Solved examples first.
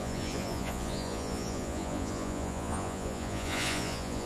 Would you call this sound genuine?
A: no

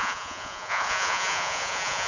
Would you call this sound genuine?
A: no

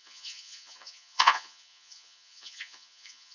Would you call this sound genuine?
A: no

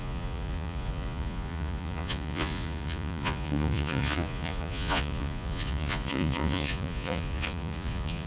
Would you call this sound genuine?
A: no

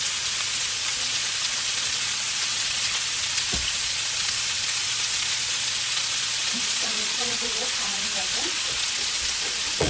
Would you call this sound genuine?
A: no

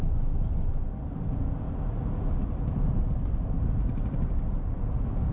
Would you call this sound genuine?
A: yes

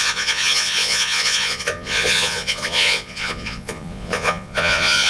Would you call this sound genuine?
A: no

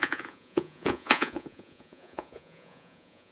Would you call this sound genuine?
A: no